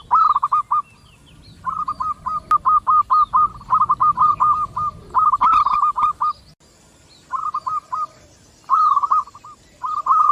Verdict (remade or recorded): recorded